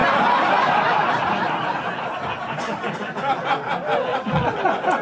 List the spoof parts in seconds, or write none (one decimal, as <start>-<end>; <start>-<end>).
4.1-4.6